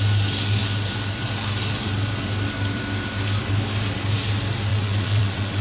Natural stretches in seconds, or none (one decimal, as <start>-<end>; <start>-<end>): 0.0-4.7